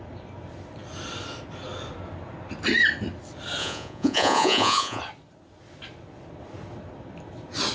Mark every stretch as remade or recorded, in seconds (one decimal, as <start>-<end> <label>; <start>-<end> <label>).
0.0-3.6 recorded; 3.6-5.0 remade; 5.0-7.7 recorded